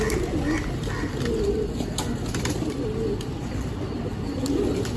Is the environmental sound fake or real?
real